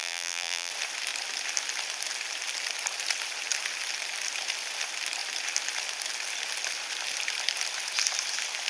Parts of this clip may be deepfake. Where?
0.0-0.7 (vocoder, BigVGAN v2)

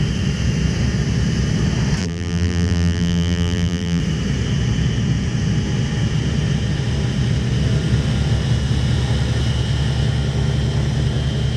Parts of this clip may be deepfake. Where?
2.0-4.0 (vocoder, BigVGAN v2)

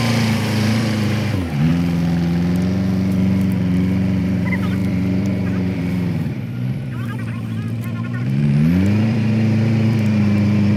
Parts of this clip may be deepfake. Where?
0.0-1.7 (vocoder, BigVGAN v2); 4.2-10.8

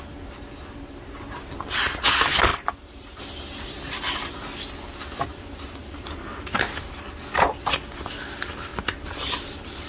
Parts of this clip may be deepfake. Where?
2.5-3.2 (vocoder, BigVGAN v2); 5.8-7.0; 8.7-9.9

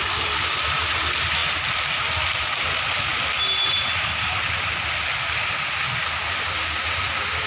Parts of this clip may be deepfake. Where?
none

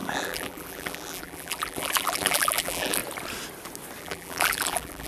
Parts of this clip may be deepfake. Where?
0.0-3.0 (vocoder, BigVGAN v2); 4.0-5.1